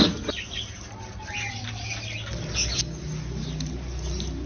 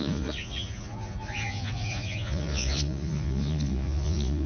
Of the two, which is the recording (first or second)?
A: first